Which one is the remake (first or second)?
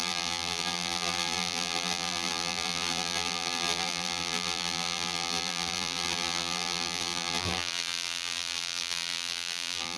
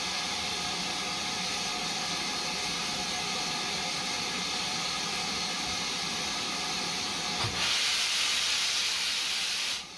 first